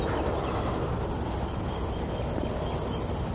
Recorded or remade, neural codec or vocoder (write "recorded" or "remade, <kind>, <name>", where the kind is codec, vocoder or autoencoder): recorded